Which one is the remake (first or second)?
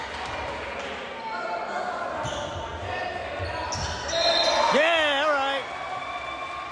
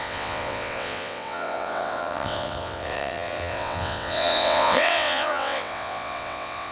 second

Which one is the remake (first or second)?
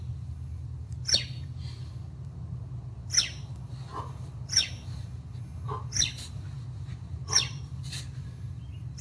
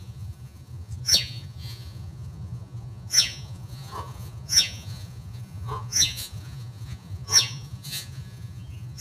second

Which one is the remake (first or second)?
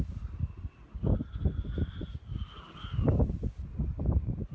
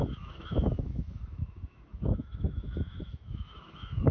second